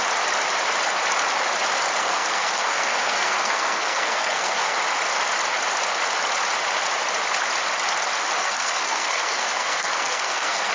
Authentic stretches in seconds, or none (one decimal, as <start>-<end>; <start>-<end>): 0.0-2.0; 4.8-8.4